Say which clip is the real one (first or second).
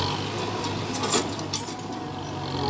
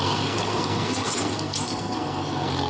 first